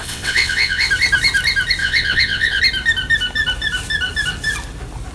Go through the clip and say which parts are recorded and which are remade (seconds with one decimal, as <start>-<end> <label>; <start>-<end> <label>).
0.0-0.9 remade; 0.9-1.8 recorded; 1.8-2.6 remade; 2.6-5.1 recorded